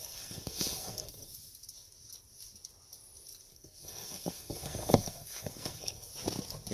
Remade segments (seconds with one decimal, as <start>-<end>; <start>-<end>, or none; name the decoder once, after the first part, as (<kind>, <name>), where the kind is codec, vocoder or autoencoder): 0.0-1.3 (codec, SNAC); 3.5-6.1